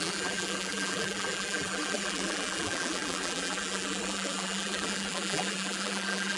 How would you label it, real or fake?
fake